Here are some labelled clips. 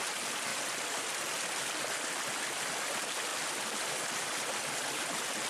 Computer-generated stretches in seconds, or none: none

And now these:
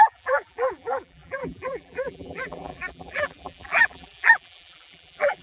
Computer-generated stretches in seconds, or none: 0.0-5.4 (vocoder, BigVGAN v2)

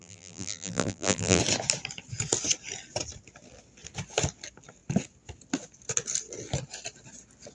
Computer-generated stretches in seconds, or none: 0.0-1.4 (vocoder, BigVGAN v2)

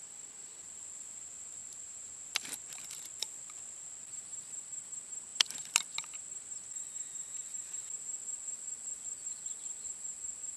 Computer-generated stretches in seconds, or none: 1.6-2.6 (vocoder, BigVGAN v2)

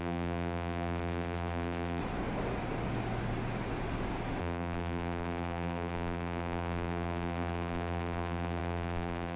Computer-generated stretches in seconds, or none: 0.0-2.0 (vocoder, BigVGAN v2); 4.4-9.4

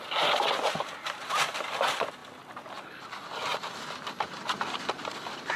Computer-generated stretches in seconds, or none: none